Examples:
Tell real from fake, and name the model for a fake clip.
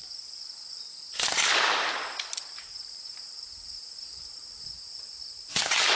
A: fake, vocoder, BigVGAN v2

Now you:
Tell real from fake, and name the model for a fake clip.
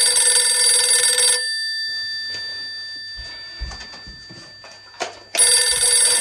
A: real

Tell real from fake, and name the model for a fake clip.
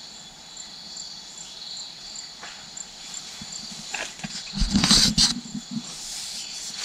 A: real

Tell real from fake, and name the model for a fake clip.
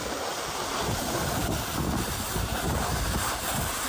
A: fake, vocoder, BigVGAN v2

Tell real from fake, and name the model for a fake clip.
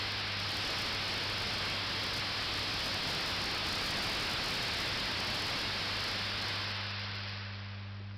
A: real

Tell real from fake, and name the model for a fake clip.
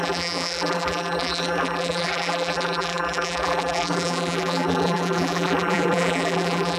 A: fake, vocoder, BigVGAN v2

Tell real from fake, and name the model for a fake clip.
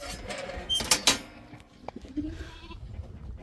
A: real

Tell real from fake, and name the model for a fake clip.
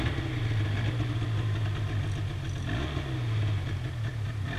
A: real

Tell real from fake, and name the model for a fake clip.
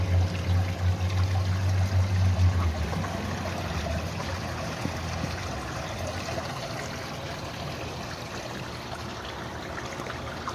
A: real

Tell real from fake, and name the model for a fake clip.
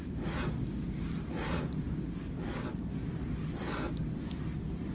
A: real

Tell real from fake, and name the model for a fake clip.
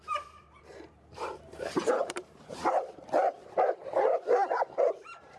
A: fake, vocoder, BigVGAN v2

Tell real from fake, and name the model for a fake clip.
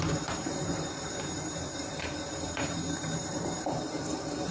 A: fake, vocoder, BigVGAN v2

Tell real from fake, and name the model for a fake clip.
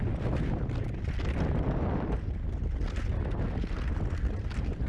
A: real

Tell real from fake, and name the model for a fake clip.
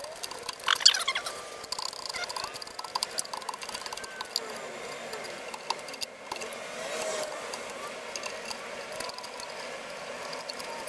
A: real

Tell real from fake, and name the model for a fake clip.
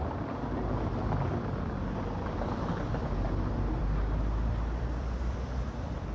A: fake, vocoder, BigVGAN v2